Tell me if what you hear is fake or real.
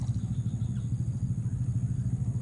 real